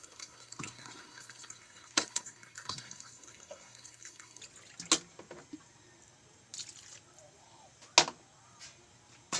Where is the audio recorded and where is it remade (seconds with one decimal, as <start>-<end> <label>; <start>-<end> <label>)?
0.0-4.4 remade; 4.4-9.4 recorded

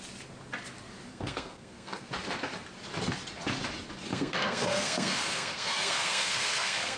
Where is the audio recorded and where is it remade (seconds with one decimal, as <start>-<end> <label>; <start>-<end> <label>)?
0.0-1.1 recorded; 1.1-2.1 remade; 2.1-4.1 recorded; 4.1-7.0 remade

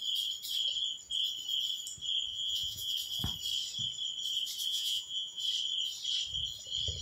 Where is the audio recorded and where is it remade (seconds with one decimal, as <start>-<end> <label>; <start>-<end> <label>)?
0.0-2.3 recorded; 2.3-2.9 remade; 2.9-4.7 recorded; 4.7-5.4 remade; 5.4-7.0 recorded

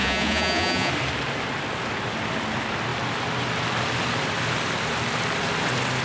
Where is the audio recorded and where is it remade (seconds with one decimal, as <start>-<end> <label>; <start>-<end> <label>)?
0.0-0.9 remade; 0.9-6.0 recorded

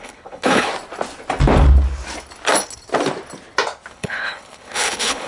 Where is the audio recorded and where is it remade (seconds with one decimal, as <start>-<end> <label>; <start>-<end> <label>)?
0.0-0.7 remade; 0.7-3.9 recorded; 3.9-5.3 remade

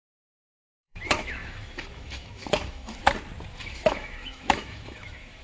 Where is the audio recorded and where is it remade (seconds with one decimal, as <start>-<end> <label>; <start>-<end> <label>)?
0.0-3.0 remade; 3.0-3.5 recorded; 3.5-5.4 remade

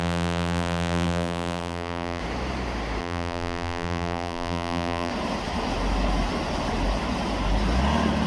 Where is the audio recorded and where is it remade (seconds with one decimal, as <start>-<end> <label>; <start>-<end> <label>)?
0.0-2.2 remade; 2.2-3.0 recorded; 3.0-5.1 remade; 5.1-8.3 recorded

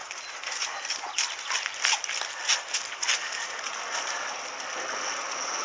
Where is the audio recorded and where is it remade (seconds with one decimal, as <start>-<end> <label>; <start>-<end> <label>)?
0.0-5.6 recorded